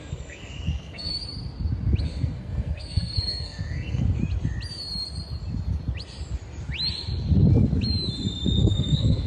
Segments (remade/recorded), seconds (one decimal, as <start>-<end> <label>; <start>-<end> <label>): 0.0-1.1 remade; 1.1-2.0 recorded; 2.0-4.2 remade; 4.2-8.6 recorded; 8.6-9.3 remade

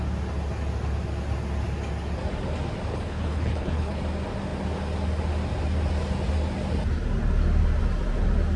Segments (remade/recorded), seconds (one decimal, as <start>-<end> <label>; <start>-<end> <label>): 0.0-2.9 recorded; 2.9-4.0 remade; 4.0-8.6 recorded